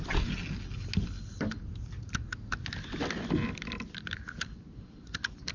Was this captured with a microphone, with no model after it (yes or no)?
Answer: yes